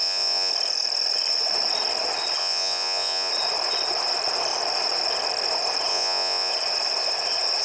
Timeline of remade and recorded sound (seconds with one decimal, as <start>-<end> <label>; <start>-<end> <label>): 0.0-0.5 remade; 0.5-2.4 recorded; 2.4-3.3 remade; 3.3-5.9 recorded; 5.9-6.5 remade; 6.5-7.6 recorded